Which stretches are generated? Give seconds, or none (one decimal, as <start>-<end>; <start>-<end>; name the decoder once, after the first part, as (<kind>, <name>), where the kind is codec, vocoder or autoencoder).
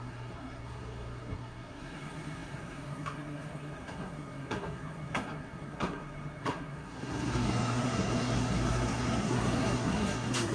0.0-10.5 (codec, SNAC)